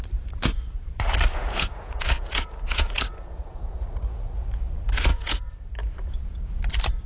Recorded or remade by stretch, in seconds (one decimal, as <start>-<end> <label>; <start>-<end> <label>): 0.0-1.3 recorded; 1.3-3.8 remade; 3.8-5.1 recorded; 5.1-6.6 remade; 6.6-7.1 recorded